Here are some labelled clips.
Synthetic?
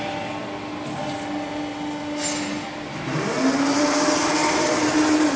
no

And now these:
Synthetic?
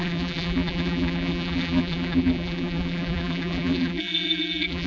yes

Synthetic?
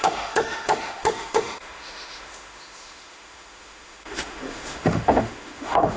yes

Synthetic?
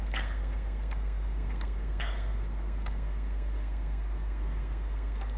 yes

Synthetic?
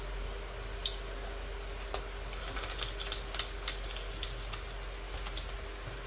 no